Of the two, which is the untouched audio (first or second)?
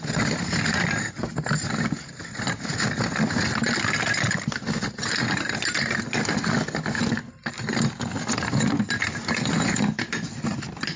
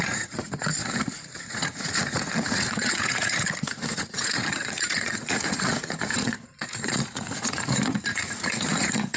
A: first